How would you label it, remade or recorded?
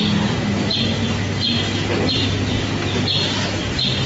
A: recorded